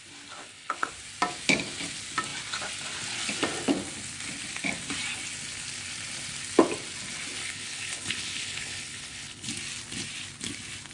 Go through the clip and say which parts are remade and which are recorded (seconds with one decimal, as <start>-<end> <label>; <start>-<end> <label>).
0.0-0.4 recorded; 0.4-0.9 remade; 0.9-7.4 recorded; 7.4-9.5 remade; 9.5-10.9 recorded